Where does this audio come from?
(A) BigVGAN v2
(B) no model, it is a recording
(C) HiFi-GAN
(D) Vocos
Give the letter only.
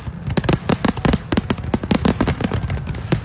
B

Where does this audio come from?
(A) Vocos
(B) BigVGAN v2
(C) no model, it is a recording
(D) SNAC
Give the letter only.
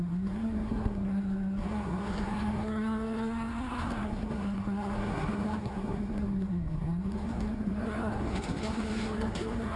D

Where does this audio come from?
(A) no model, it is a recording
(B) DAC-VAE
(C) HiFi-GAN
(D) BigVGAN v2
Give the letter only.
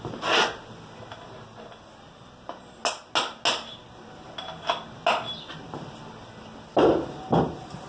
A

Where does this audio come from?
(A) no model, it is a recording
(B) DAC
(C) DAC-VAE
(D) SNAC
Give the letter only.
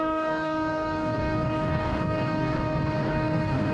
B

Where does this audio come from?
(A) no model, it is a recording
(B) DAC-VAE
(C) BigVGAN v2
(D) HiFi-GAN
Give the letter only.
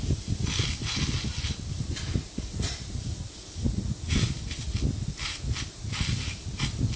A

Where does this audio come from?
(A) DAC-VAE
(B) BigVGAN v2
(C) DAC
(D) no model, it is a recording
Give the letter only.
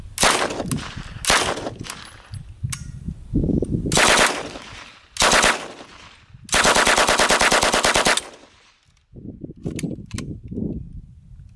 D